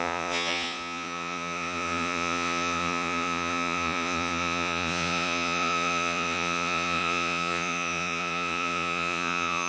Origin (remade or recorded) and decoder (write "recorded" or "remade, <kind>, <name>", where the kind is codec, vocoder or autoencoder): remade, vocoder, Vocos